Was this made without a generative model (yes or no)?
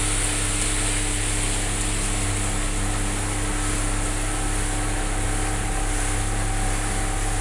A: yes